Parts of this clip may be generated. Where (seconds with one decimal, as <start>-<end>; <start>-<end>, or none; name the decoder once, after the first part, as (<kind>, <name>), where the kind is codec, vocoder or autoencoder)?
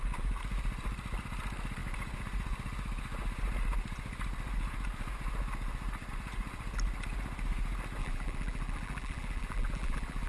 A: 8.0-10.3 (vocoder, BigVGAN v2)